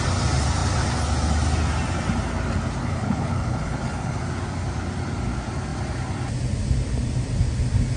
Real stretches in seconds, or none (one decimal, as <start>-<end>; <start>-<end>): 0.0-2.8; 4.2-8.0